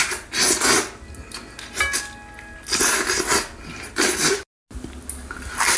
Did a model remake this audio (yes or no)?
no